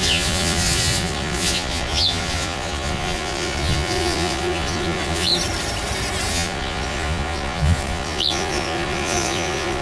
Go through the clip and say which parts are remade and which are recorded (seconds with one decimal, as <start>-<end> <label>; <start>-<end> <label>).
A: 0.0-5.3 remade; 5.3-6.3 recorded; 6.3-9.8 remade